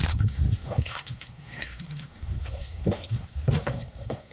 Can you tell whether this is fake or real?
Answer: fake